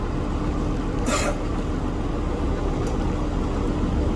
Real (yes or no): yes